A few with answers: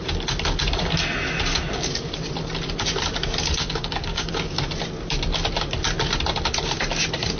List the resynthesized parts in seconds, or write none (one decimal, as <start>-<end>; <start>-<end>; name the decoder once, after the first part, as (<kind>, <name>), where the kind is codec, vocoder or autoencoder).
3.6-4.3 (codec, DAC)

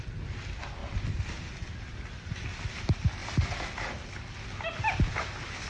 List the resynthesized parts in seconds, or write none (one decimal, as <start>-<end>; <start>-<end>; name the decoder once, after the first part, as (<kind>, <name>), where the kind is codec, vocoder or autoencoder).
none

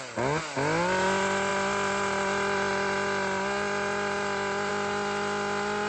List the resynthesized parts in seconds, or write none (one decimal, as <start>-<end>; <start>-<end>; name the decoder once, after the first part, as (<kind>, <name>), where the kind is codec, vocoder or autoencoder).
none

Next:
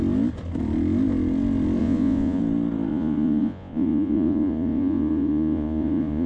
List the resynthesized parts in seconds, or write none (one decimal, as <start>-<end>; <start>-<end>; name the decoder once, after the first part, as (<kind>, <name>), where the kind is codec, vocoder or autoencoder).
1.8-2.4 (vocoder, Vocos); 2.9-6.3

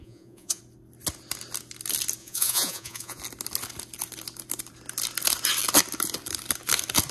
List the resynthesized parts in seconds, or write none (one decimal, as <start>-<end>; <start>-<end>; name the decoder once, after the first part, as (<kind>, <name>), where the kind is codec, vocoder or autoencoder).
0.0-0.6 (vocoder, Vocos); 2.2-3.2